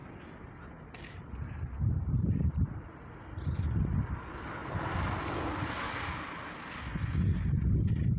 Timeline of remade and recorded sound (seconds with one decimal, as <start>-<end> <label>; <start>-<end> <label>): 0.0-8.2 recorded